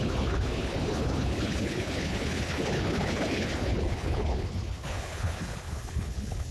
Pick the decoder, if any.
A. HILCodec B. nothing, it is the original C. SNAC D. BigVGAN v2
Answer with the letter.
A